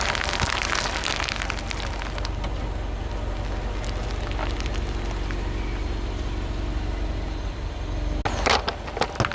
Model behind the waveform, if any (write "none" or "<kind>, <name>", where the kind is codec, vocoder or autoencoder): none